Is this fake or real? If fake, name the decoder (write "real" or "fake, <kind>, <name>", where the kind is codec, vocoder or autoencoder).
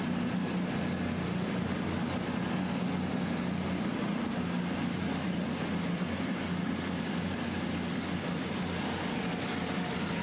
real